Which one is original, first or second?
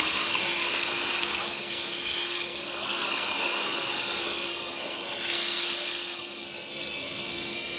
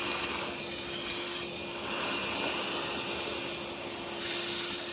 second